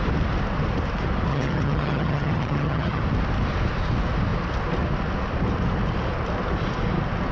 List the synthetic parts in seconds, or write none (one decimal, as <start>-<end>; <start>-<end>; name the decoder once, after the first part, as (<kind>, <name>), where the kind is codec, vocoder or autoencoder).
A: 1.3-3.0 (vocoder, HiFi-GAN)